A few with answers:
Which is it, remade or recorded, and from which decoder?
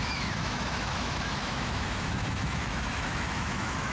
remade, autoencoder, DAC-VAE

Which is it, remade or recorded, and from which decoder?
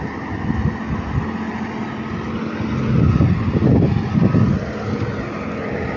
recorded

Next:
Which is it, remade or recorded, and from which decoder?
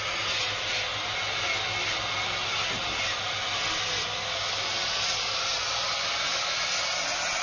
recorded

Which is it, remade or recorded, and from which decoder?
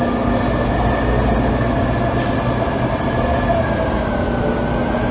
recorded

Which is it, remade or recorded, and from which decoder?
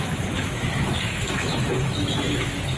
remade, autoencoder, DAC-VAE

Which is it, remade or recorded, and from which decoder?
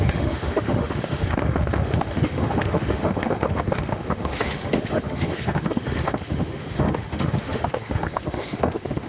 remade, autoencoder, DAC-VAE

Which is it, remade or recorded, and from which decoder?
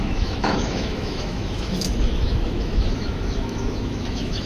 remade, autoencoder, DAC-VAE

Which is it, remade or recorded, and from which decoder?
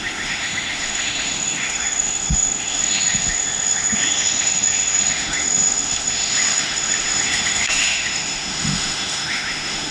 remade, autoencoder, DAC-VAE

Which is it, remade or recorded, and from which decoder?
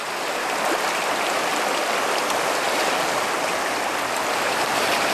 recorded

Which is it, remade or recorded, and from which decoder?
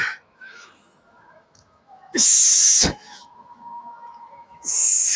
remade, autoencoder, DAC-VAE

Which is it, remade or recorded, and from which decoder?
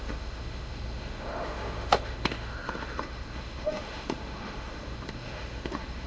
remade, autoencoder, DAC-VAE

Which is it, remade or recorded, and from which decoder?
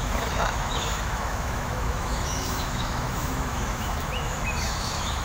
remade, autoencoder, DAC-VAE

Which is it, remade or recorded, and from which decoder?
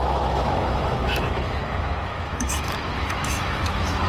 remade, autoencoder, DAC-VAE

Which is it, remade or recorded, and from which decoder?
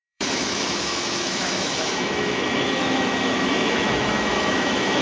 remade, autoencoder, DAC-VAE